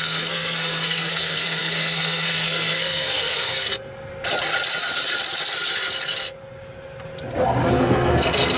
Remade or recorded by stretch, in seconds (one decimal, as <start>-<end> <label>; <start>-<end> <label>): 0.0-3.7 remade; 3.7-7.7 recorded; 7.7-8.6 remade